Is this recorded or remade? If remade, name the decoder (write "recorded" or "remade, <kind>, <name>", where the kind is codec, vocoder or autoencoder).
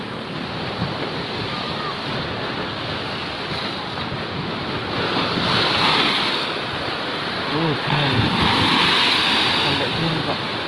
recorded